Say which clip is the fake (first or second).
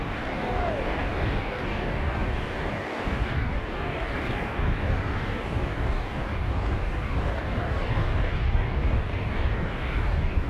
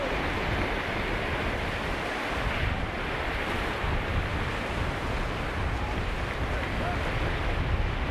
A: first